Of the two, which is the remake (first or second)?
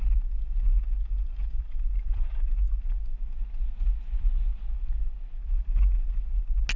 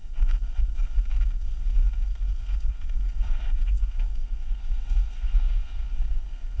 second